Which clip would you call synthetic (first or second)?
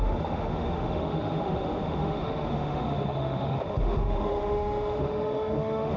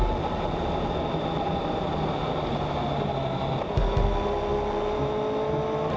first